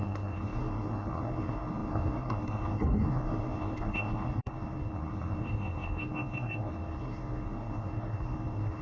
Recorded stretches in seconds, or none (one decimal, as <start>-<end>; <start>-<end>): none